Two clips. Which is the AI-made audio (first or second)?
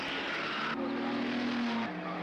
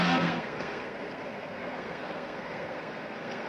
second